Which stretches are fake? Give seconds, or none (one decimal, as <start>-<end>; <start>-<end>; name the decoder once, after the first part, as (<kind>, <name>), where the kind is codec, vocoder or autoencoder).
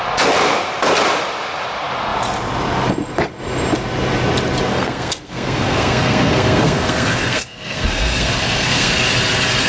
4.7-8.9 (codec, SNAC)